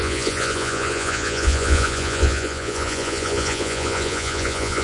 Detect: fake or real fake